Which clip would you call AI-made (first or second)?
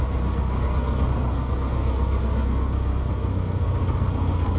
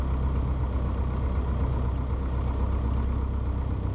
first